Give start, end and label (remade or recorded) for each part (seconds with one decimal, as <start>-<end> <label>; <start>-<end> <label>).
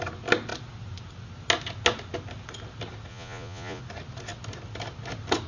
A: 0.0-3.1 recorded; 3.1-3.8 remade; 3.8-5.5 recorded